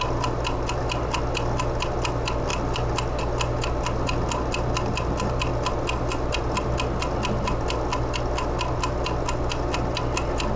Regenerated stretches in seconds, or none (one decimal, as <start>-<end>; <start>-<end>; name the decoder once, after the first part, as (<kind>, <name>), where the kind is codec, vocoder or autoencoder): none